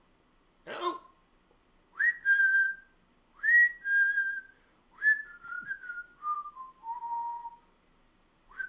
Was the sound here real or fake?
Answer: real